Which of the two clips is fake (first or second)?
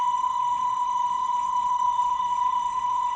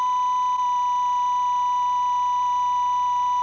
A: first